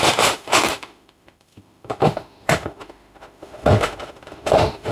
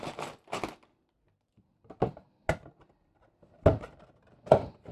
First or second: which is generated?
first